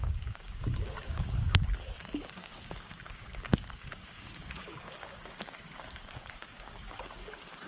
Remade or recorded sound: remade